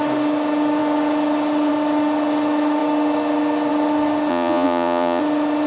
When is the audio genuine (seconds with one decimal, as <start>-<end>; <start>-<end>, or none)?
0.0-4.3; 5.2-5.7